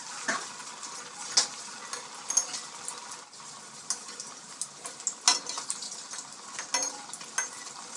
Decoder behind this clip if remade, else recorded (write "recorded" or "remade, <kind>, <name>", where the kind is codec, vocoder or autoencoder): recorded